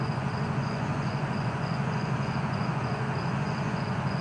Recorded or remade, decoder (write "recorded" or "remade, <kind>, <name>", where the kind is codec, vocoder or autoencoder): remade, vocoder, Vocos